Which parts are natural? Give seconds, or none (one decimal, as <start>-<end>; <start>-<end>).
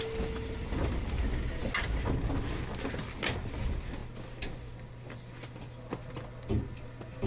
0.0-7.3